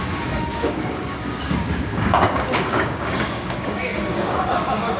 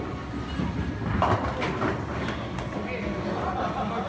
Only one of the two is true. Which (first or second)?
second